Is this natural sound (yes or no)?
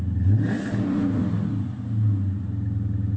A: yes